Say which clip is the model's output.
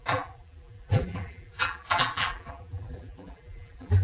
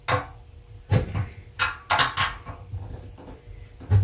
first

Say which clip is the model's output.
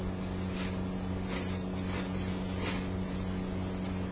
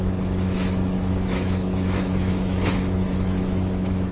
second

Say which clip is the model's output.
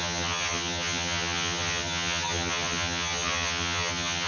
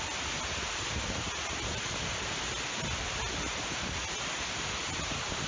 first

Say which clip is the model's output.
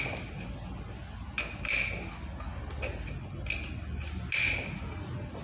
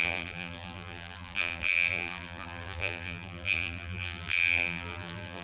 second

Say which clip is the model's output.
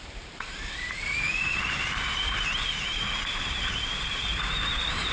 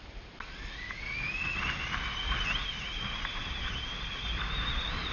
first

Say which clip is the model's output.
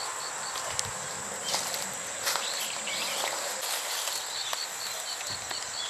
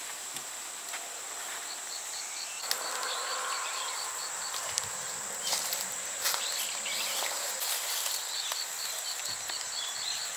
second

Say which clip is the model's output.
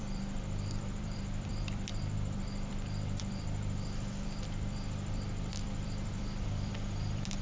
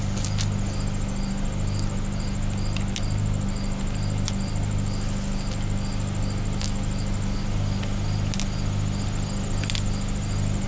first